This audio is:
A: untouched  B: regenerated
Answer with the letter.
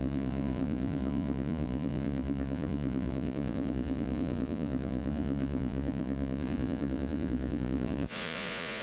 B